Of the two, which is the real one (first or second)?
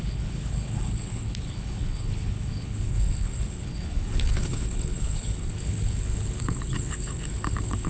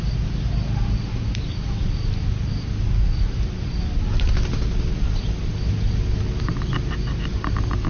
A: second